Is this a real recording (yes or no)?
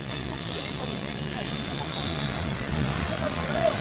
no